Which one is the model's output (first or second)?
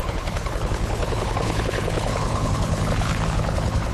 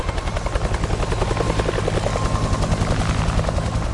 first